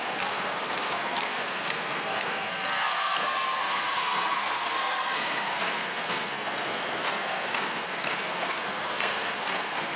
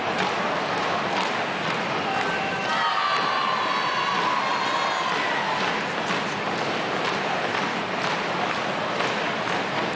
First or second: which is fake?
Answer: first